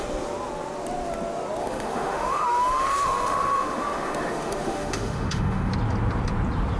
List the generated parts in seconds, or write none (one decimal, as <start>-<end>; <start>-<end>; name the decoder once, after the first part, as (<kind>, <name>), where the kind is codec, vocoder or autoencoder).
1.6-5.7 (autoencoder, DAC-VAE)